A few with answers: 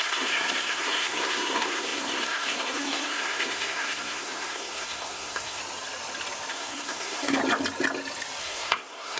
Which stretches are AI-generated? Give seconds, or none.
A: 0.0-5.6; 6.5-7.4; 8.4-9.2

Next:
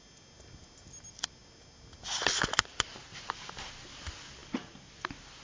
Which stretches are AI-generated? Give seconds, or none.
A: none

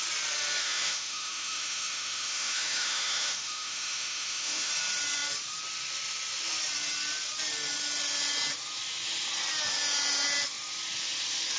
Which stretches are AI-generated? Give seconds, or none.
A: 0.6-4.7